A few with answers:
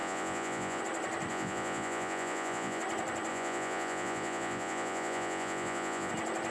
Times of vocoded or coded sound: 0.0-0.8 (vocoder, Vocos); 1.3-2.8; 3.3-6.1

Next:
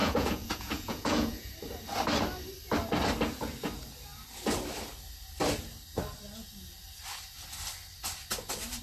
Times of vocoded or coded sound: 0.0-1.5 (vocoder, Vocos)

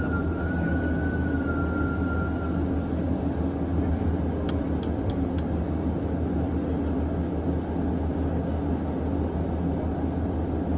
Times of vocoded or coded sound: none